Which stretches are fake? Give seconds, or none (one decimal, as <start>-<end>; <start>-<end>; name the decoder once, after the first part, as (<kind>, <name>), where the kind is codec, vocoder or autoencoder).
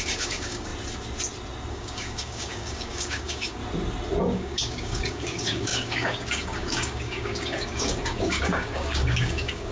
0.0-0.7 (codec, DAC); 1.7-3.6; 4.2-9.7